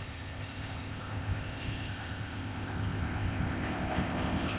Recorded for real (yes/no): no